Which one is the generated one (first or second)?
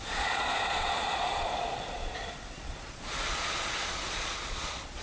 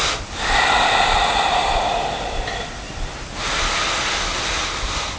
first